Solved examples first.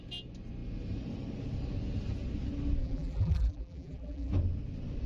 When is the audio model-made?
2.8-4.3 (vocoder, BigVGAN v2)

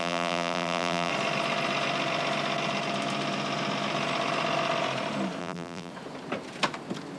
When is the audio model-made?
0.0-1.1 (vocoder, BigVGAN v2); 5.4-5.9

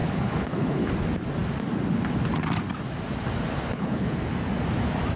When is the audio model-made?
0.0-0.9 (codec, HILCodec); 3.7-4.2

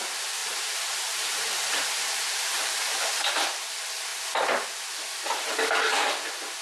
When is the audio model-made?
0.4-2.7 (vocoder, BigVGAN v2)

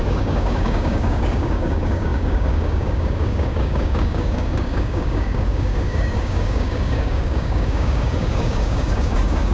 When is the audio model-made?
0.0-9.5 (codec, DAC)